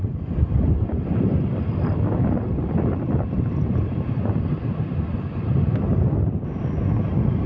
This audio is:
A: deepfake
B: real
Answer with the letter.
B